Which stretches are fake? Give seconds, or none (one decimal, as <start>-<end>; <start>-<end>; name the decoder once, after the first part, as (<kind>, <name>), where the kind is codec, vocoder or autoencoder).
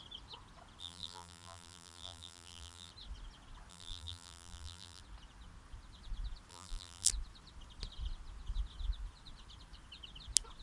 0.8-2.9 (vocoder, BigVGAN v2); 3.7-5.0; 6.5-7.1